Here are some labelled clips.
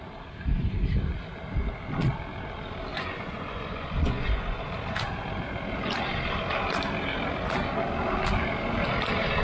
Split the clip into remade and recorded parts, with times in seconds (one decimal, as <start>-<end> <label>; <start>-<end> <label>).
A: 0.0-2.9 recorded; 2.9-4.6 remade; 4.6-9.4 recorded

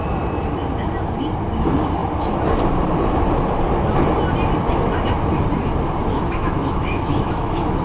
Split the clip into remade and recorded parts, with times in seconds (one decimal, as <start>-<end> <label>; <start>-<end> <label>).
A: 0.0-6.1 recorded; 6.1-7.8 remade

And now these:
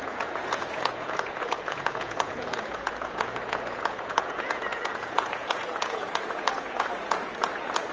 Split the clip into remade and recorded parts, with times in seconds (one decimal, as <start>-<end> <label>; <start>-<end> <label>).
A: 0.0-7.9 remade